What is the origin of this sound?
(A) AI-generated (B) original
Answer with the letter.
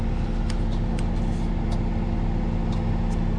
B